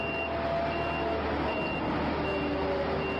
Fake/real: real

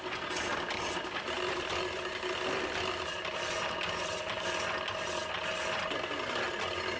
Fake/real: real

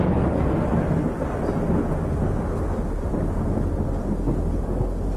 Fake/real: real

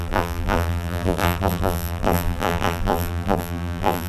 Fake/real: fake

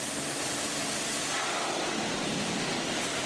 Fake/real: fake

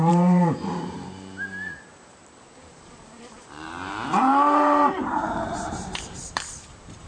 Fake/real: fake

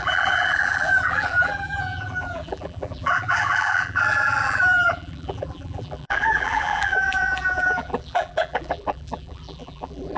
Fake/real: fake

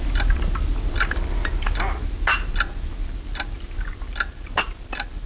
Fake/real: real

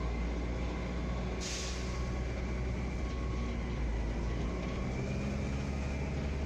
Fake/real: real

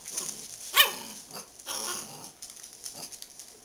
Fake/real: real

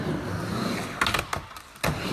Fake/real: real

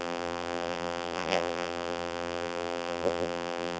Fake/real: fake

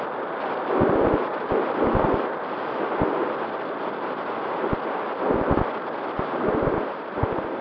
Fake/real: real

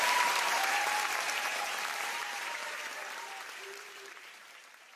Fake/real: fake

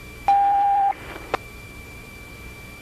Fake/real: fake